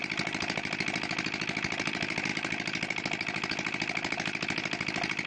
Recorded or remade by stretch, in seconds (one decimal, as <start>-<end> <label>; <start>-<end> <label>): 0.0-5.3 recorded

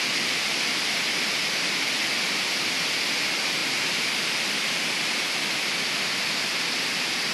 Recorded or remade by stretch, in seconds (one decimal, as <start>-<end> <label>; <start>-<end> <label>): 0.0-7.3 recorded